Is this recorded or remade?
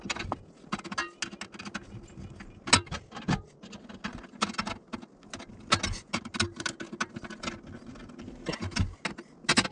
recorded